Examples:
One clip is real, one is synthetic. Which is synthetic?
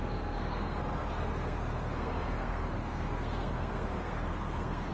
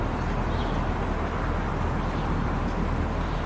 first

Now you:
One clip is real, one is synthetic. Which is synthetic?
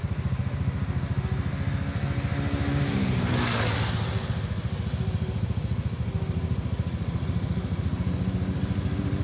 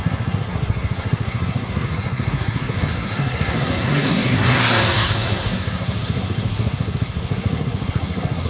second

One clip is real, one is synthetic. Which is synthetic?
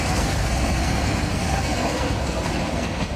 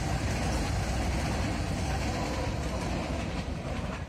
first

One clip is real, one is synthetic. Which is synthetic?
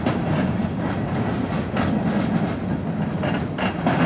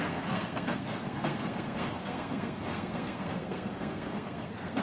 second